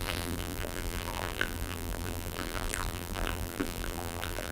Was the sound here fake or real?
fake